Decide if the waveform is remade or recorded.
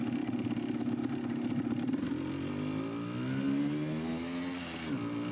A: recorded